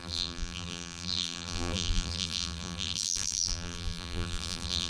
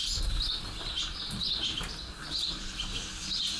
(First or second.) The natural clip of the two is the second